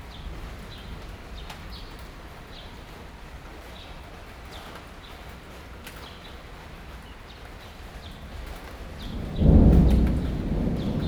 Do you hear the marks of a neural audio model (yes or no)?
no